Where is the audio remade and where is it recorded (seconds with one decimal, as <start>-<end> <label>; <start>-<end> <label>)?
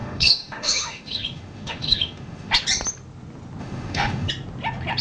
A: 0.0-2.5 remade; 2.5-3.6 recorded; 3.6-4.3 remade; 4.3-5.0 recorded